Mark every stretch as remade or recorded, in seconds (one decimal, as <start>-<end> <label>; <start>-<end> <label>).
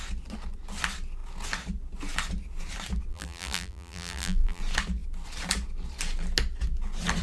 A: 0.0-3.1 recorded; 3.1-4.6 remade; 4.6-7.2 recorded